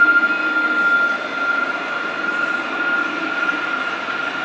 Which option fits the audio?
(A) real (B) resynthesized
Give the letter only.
A